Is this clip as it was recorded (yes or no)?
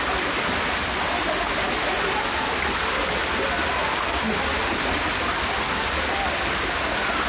yes